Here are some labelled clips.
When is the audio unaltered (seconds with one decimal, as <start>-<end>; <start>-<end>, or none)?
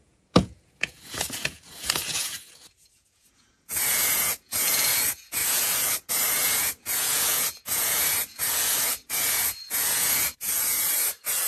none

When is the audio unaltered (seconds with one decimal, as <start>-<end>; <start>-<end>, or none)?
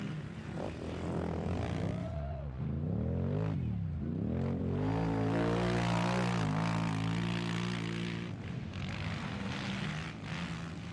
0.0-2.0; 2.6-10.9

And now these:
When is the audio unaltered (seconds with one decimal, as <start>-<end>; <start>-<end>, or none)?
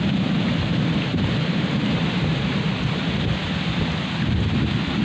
0.0-1.1; 2.6-5.0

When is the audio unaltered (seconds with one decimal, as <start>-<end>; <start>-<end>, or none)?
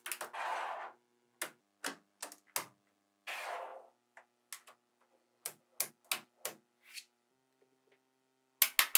0.0-9.0